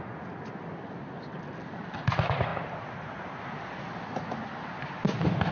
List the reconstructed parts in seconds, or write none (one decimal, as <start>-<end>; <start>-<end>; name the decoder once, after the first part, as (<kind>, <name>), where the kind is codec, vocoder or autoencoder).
none